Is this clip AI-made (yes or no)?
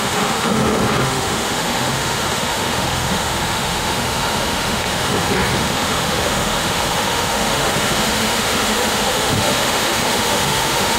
yes